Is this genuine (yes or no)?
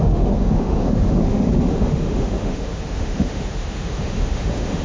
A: no